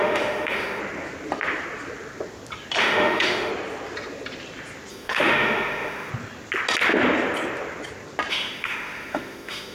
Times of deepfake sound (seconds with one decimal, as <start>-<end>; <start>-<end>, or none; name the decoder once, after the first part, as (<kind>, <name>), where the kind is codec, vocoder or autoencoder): 0.0-0.8 (autoencoder, DAC-VAE); 2.8-3.5; 4.9-6.1; 8.3-9.7